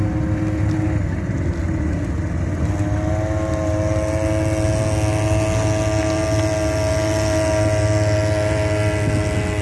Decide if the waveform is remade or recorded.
recorded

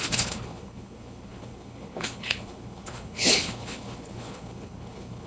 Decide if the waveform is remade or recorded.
remade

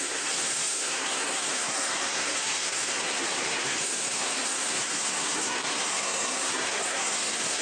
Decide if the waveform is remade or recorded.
remade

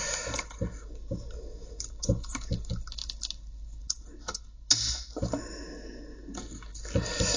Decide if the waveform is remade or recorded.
recorded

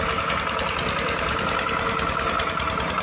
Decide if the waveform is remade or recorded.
recorded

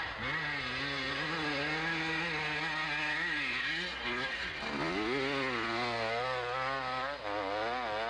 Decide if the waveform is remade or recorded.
recorded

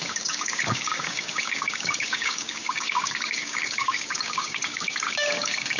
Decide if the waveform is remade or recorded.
remade